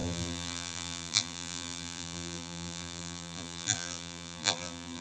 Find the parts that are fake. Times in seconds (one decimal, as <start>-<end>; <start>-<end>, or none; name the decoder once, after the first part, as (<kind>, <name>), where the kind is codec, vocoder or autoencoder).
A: 0.0-5.0 (vocoder, BigVGAN v2)